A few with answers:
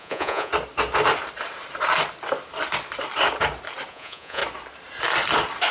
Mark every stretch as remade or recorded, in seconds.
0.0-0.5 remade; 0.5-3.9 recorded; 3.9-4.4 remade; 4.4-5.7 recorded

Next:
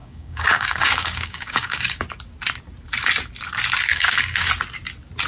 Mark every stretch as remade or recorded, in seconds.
0.0-2.0 remade; 2.0-3.9 recorded; 3.9-4.5 remade; 4.5-5.3 recorded

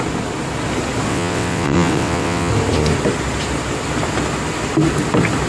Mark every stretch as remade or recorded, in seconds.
0.0-1.1 recorded; 1.1-2.5 remade; 2.5-5.5 recorded

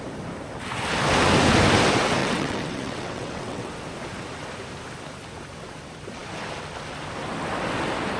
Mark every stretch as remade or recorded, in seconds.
0.0-2.2 recorded; 2.2-3.7 remade; 3.7-8.2 recorded

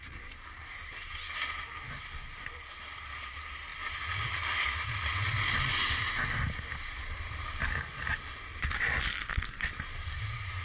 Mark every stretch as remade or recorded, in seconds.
0.0-10.6 recorded

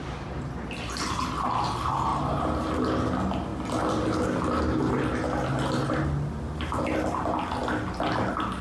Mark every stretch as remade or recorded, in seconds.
0.0-2.1 recorded; 2.1-2.7 remade; 2.7-8.6 recorded

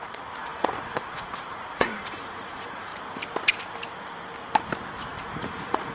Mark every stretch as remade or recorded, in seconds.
0.0-2.9 remade; 2.9-5.1 recorded; 5.1-5.9 remade

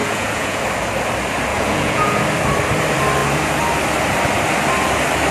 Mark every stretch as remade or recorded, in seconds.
0.0-0.6 remade; 0.6-1.5 recorded; 1.5-2.2 remade; 2.2-5.3 recorded